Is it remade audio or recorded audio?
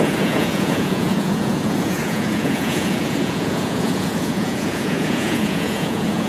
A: remade